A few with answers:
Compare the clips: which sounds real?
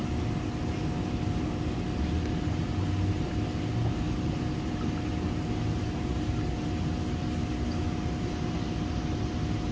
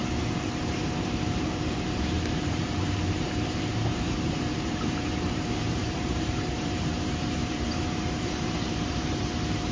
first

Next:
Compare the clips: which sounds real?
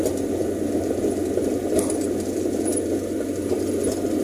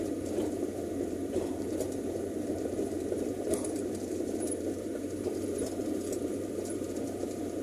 first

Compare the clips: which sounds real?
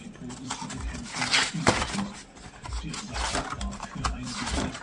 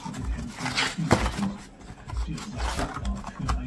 second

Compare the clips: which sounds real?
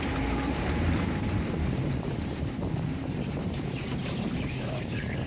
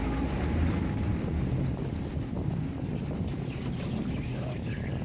second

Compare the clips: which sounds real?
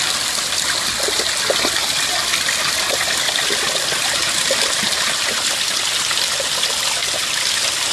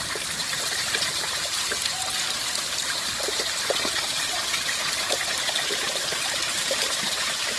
first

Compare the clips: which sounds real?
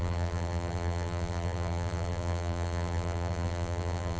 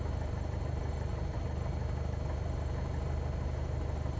second